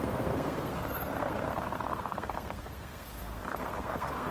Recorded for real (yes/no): no